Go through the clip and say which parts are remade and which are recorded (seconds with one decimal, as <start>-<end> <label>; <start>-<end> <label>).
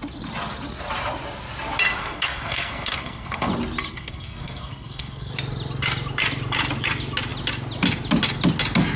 0.0-2.0 recorded; 2.0-3.5 remade; 3.5-3.9 recorded; 3.9-5.3 remade; 5.3-9.0 recorded